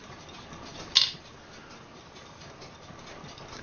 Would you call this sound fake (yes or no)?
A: no